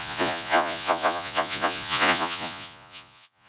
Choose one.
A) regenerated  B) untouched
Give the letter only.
A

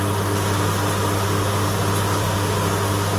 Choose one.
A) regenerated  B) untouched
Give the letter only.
B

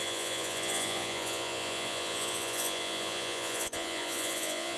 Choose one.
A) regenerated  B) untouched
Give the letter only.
A